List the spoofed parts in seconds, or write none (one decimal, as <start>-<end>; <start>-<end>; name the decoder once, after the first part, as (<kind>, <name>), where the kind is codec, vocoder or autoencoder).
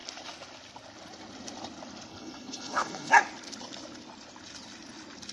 2.1-3.1 (codec, HILCodec)